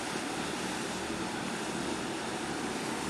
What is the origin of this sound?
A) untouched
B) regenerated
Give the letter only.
A